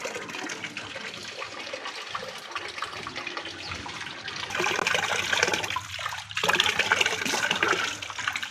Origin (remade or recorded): recorded